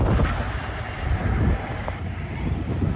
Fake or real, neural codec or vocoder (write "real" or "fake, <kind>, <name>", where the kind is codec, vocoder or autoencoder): fake, vocoder, BigVGAN v2